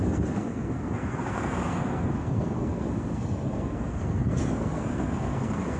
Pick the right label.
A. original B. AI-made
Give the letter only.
B